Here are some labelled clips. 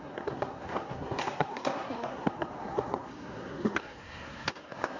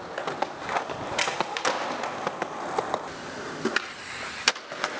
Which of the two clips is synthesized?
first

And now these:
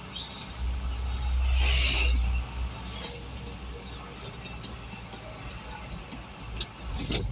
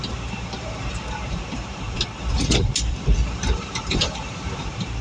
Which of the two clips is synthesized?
second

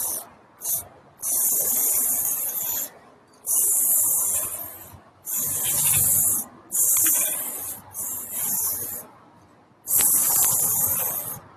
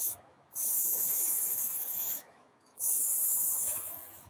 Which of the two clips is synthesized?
second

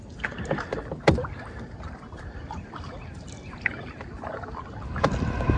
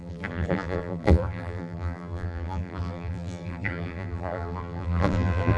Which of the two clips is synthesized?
second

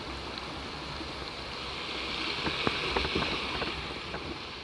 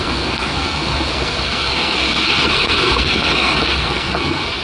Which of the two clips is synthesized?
second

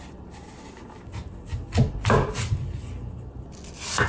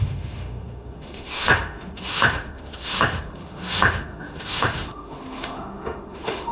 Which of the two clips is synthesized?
second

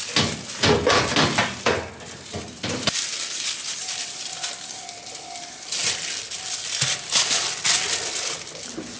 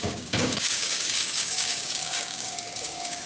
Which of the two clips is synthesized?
second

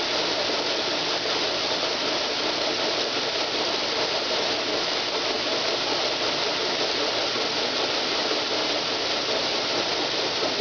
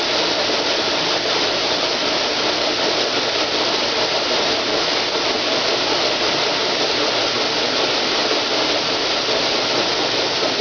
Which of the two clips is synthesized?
first